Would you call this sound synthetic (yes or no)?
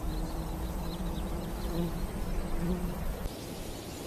no